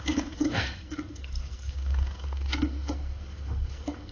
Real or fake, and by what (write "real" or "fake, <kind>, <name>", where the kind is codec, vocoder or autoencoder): fake, codec, SNAC